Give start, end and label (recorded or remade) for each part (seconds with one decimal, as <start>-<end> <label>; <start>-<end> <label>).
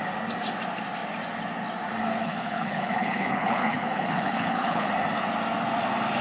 0.0-2.2 recorded; 2.2-4.9 remade; 4.9-6.2 recorded